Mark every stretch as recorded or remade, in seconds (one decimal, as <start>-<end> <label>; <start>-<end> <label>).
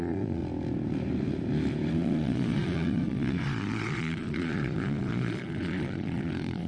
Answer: 0.0-0.4 remade; 0.4-1.9 recorded; 1.9-6.7 remade